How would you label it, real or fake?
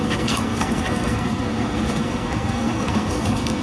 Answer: fake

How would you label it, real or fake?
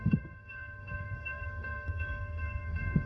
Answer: fake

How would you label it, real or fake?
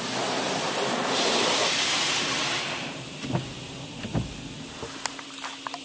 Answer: real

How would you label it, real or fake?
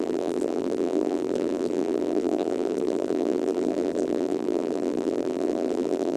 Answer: fake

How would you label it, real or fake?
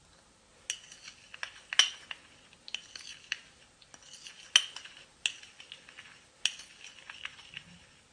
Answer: real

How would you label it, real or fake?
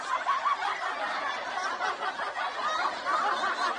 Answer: real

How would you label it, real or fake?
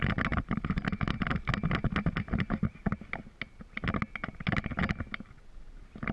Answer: real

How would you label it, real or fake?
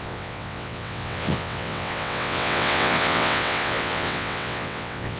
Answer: fake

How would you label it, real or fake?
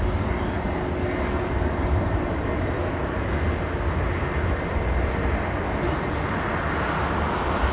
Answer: real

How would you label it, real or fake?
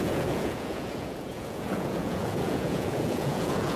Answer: fake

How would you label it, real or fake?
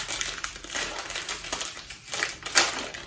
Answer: real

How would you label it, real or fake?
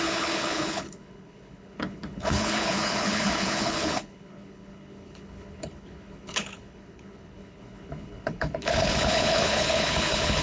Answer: fake